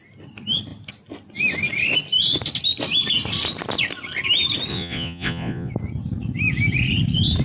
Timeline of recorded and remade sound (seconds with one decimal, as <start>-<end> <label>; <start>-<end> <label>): 0.0-4.7 recorded; 4.7-5.7 remade; 5.7-7.4 recorded